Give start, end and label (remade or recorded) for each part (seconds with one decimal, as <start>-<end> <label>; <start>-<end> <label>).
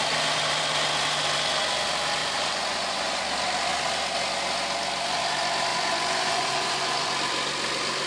0.0-2.2 recorded; 2.2-3.2 remade; 3.2-5.7 recorded; 5.7-7.1 remade; 7.1-8.1 recorded